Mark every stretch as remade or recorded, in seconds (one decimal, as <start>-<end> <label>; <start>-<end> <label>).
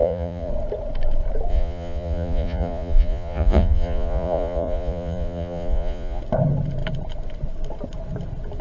0.0-0.5 remade; 0.5-1.5 recorded; 1.5-6.2 remade; 6.2-8.6 recorded